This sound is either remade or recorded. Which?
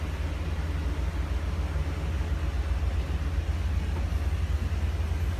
recorded